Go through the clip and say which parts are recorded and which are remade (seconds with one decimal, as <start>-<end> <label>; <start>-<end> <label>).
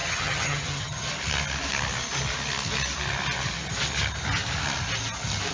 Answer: 0.0-1.1 remade; 1.1-5.5 recorded